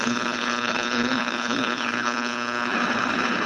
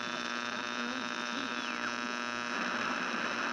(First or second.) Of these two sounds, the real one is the second